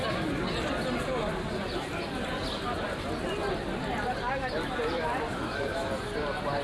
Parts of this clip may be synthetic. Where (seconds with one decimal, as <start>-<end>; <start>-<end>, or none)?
5.3-5.9